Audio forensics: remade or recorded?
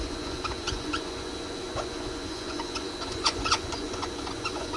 remade